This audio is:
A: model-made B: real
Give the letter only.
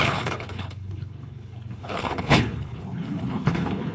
A